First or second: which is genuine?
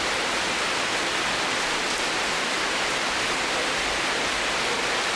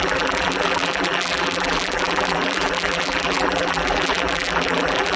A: first